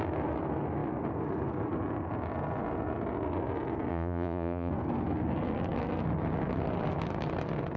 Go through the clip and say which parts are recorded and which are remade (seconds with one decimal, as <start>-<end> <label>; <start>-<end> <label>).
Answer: 0.0-3.9 recorded; 3.9-4.7 remade; 4.7-7.8 recorded